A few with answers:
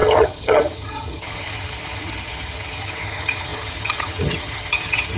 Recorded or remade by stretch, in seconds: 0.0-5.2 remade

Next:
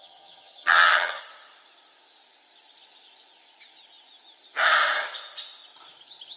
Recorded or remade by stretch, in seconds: 0.0-1.2 remade; 1.2-6.4 recorded

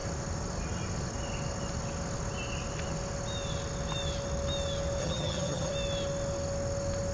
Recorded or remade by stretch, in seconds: 0.0-5.0 recorded; 5.0-5.7 remade; 5.7-7.1 recorded

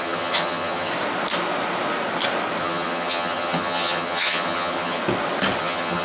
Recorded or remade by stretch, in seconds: 0.0-0.9 remade; 0.9-2.6 recorded; 2.6-5.0 remade; 5.0-5.6 recorded; 5.6-6.0 remade

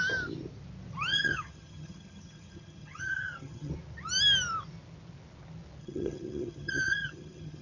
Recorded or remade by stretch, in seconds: 0.0-1.1 recorded; 1.1-3.7 remade; 3.7-5.8 recorded; 5.8-7.6 remade

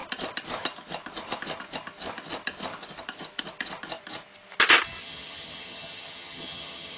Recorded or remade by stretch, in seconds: 0.0-5.0 recorded; 5.0-7.0 remade

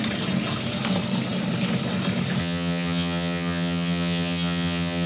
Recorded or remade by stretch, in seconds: 0.0-2.4 recorded; 2.4-5.1 remade